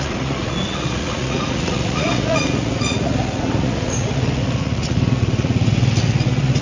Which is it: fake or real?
fake